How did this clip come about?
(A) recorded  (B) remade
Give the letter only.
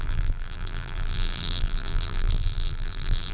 B